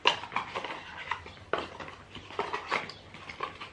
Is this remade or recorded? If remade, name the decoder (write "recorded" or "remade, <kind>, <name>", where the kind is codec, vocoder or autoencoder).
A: recorded